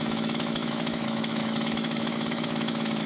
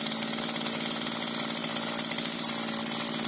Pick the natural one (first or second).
second